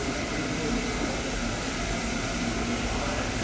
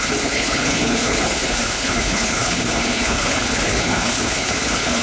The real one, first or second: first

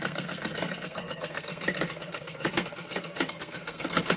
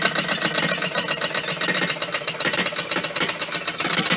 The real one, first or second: second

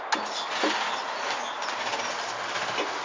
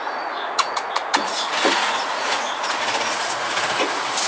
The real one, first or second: first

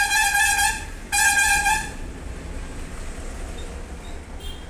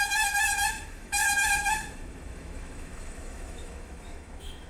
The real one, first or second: first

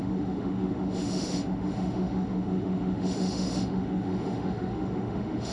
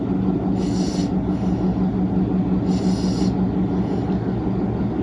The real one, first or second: second